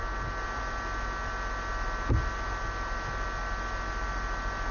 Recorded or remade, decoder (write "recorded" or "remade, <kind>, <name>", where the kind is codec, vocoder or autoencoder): recorded